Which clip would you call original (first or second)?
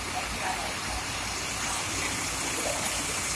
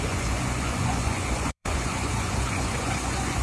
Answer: first